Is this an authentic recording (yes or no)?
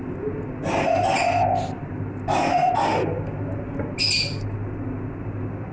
yes